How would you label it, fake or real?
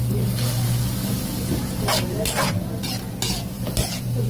real